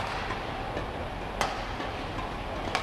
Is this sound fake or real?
real